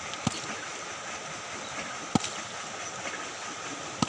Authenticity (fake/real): real